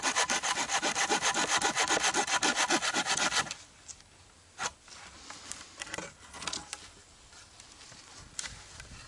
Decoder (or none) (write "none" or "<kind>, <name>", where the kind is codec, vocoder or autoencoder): none